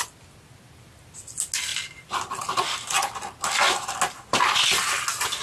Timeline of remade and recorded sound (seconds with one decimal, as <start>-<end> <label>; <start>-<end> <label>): 0.0-5.4 recorded